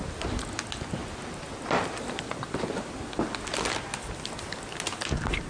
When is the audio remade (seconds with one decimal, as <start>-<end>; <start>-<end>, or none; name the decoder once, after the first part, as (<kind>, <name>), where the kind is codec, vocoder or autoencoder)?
none